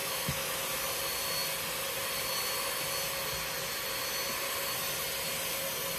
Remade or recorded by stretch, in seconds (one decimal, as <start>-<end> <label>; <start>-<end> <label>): 0.0-0.6 remade; 0.6-6.0 recorded